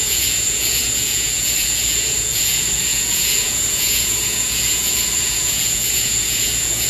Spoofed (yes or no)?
yes